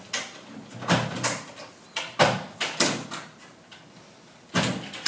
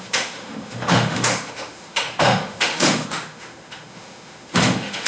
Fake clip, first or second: second